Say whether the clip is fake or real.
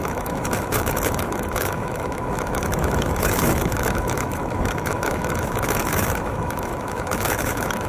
fake